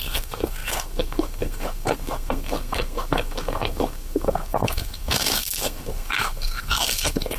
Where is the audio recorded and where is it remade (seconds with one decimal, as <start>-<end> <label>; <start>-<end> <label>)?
0.0-7.4 remade

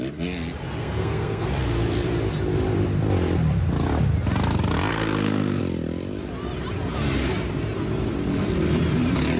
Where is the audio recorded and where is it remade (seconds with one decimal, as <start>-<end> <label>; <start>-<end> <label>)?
0.0-0.8 recorded; 0.8-1.5 remade; 1.5-4.9 recorded; 4.9-5.6 remade; 5.6-9.4 recorded

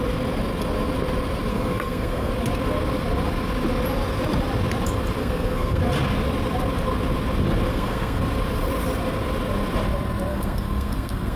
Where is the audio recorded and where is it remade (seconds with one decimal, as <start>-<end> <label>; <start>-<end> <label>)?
0.0-1.5 recorded; 1.5-2.3 remade; 2.3-5.2 recorded; 5.2-5.8 remade; 5.8-7.7 recorded; 7.7-8.2 remade; 8.2-10.3 recorded; 10.3-11.4 remade